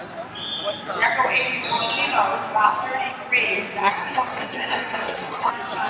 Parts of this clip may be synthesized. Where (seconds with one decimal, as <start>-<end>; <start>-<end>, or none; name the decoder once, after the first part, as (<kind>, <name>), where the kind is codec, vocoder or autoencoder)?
3.8-5.5 (codec, SNAC)